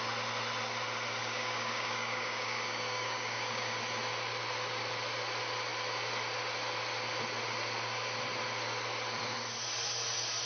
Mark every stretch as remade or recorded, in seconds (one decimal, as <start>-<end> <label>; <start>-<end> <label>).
0.0-1.2 recorded; 1.2-3.8 remade; 3.8-10.5 recorded